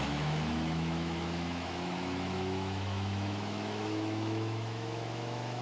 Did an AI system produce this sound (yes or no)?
yes